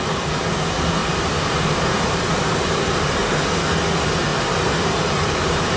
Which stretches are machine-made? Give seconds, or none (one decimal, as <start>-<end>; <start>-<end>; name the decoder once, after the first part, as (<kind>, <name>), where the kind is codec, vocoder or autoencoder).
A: 1.0-3.3 (vocoder, BigVGAN v2); 4.3-5.8